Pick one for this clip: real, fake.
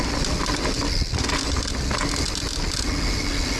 real